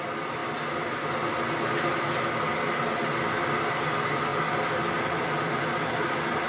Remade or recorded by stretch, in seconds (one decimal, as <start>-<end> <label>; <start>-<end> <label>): 0.0-6.5 recorded

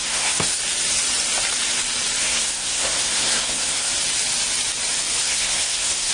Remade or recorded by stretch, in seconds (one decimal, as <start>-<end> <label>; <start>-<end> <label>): 0.0-0.6 remade; 0.6-2.2 recorded; 2.2-3.9 remade; 3.9-5.2 recorded; 5.2-6.1 remade